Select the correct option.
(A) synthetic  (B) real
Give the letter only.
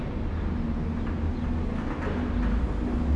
B